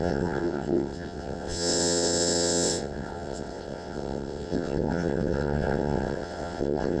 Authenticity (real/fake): fake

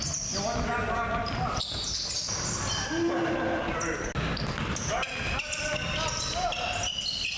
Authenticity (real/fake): real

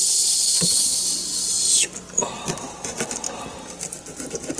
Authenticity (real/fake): real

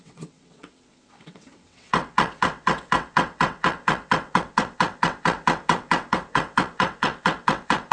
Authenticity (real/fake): fake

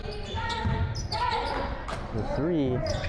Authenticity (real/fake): real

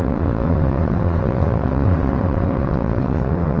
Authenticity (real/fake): fake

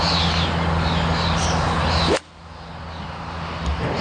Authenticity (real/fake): real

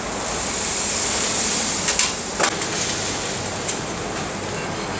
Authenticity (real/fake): real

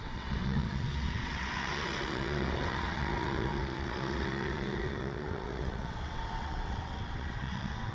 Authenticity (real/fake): fake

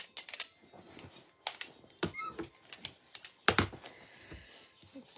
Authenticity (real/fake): real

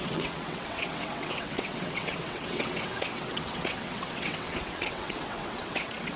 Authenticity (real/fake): fake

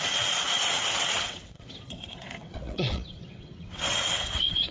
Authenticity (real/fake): fake